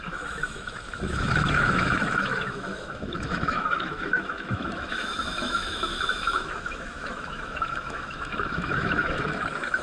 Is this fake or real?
fake